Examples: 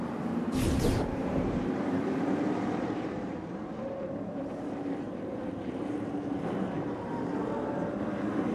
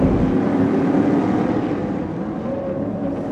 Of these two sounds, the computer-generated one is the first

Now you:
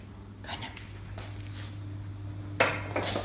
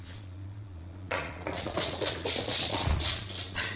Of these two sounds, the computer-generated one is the second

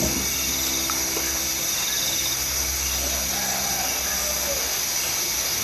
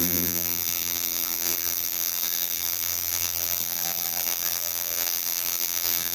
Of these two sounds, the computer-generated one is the second